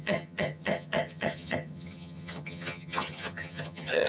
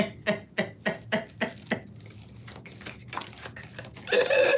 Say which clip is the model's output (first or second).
first